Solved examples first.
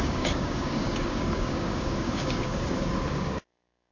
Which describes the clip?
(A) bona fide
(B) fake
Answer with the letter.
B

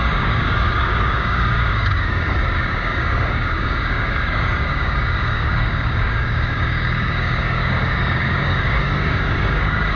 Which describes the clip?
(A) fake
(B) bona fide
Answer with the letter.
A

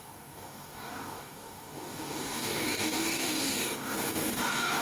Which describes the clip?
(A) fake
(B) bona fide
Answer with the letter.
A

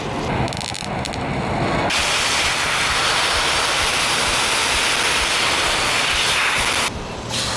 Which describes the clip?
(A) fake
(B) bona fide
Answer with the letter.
B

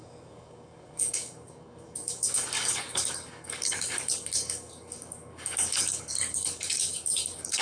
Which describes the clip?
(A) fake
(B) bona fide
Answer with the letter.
A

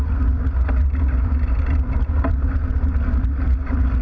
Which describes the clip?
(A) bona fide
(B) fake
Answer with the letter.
A